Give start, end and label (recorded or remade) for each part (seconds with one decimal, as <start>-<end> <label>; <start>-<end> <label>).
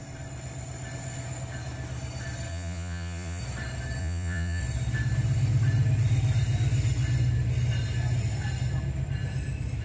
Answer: 0.0-2.5 recorded; 2.5-3.4 remade; 3.4-4.0 recorded; 4.0-4.6 remade; 4.6-9.8 recorded